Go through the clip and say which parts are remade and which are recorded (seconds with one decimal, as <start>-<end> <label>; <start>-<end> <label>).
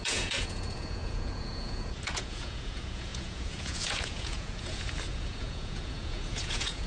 0.0-6.9 remade